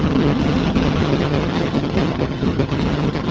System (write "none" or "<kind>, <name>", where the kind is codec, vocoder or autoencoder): vocoder, HiFi-GAN